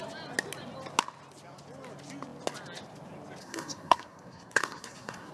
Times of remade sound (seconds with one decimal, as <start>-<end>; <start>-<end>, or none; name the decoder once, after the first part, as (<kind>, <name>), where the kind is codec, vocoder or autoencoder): 3.4-5.3 (codec, SNAC)